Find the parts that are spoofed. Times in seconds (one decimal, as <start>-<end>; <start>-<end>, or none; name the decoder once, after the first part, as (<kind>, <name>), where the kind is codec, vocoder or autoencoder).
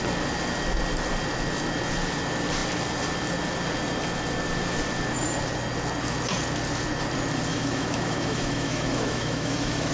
7.5-9.9 (autoencoder, DAC-VAE)